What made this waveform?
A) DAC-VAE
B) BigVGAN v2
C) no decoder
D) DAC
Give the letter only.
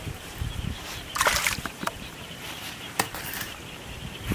B